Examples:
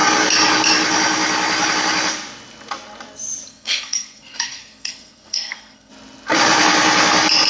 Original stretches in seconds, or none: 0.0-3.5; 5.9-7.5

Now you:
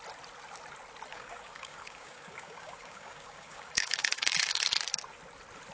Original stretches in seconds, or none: 0.0-1.1; 4.5-5.7

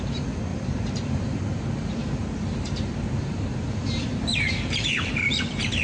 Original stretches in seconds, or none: 0.0-0.5; 1.4-2.0

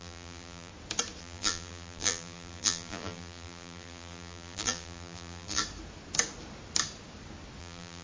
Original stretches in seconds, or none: 0.7-1.2; 5.6-7.6

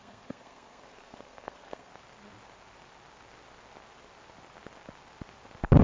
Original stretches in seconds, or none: 1.9-5.8

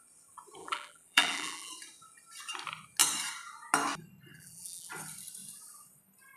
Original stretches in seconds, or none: 0.0-0.6; 1.7-4.3; 4.9-6.4

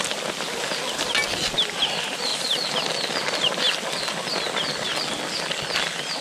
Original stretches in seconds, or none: 0.0-6.2

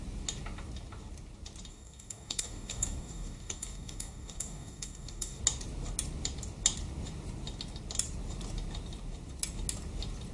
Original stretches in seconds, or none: 0.0-1.7; 5.4-10.3